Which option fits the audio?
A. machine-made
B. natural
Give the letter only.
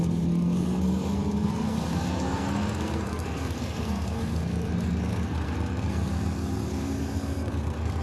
A